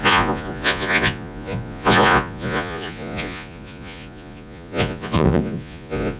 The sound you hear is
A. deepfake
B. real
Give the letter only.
A